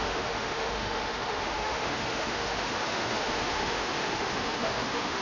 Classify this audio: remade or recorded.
remade